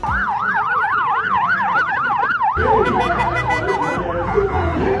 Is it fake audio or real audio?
fake